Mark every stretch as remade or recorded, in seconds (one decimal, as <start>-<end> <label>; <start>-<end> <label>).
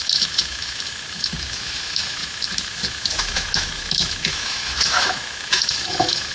0.0-6.3 remade